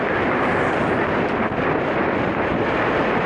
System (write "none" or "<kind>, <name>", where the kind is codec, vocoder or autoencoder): none